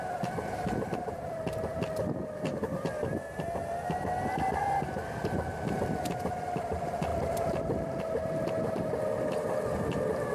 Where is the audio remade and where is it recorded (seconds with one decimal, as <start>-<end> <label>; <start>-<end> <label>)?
0.0-10.3 recorded